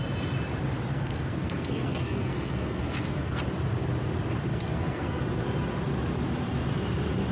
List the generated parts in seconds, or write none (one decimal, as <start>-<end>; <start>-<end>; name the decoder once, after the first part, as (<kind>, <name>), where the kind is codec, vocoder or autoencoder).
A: 0.9-3.4 (codec, SNAC); 4.5-5.2